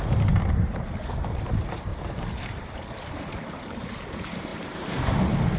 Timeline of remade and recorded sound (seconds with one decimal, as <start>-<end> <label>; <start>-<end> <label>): 0.0-1.9 remade; 1.9-4.1 recorded; 4.1-5.6 remade